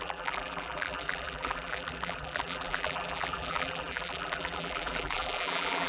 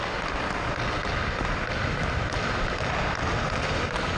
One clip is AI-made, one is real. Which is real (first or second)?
second